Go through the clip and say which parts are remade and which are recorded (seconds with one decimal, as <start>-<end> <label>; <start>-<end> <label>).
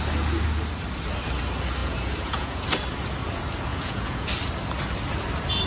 0.0-1.8 recorded; 1.8-2.7 remade; 2.7-3.7 recorded; 3.7-4.3 remade; 4.3-5.7 recorded